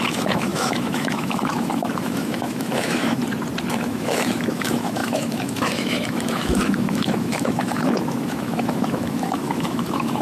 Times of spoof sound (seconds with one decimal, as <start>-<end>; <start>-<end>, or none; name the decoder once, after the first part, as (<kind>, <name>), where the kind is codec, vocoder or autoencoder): 0.0-3.2 (autoencoder, DAC-VAE); 3.7-10.2